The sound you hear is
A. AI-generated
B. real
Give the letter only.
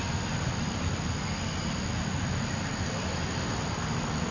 B